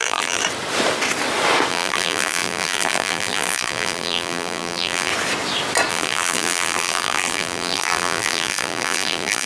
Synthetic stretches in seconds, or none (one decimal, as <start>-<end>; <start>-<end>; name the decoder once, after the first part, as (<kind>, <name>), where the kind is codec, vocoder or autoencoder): 0.0-0.4 (vocoder, BigVGAN v2); 1.7-5.1; 5.9-9.5